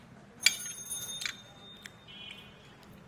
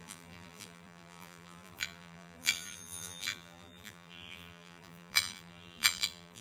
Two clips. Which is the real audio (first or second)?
first